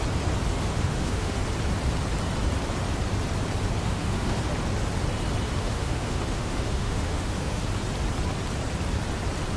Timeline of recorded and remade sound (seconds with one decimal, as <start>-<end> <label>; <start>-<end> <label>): 0.0-0.5 recorded; 0.5-1.4 remade; 1.4-3.8 recorded; 3.8-4.4 remade; 4.4-5.6 recorded; 5.6-7.6 remade; 7.6-9.6 recorded